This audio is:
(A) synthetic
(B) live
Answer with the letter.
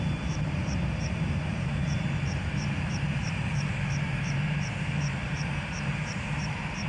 A